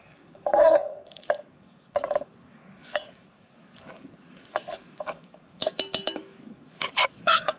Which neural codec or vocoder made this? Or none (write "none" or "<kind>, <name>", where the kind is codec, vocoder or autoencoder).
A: codec, DAC